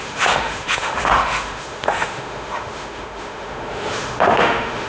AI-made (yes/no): yes